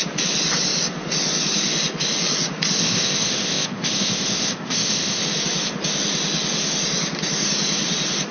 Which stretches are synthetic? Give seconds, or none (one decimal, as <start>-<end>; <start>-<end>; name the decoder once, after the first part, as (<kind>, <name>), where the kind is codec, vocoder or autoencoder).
2.8-5.2 (codec, ZipCodec)